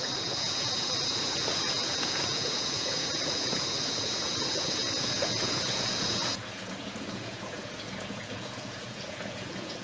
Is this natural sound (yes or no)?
no